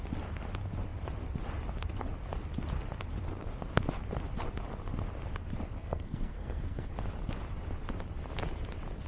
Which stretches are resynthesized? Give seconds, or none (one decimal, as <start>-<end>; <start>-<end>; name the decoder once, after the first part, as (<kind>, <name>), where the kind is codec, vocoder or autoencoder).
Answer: 5.8-6.9 (codec, SNAC)